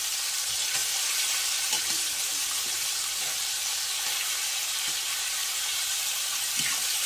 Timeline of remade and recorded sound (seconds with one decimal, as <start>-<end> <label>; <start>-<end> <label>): 0.0-0.8 recorded; 0.8-2.3 remade; 2.3-3.7 recorded; 3.7-6.3 remade; 6.3-7.1 recorded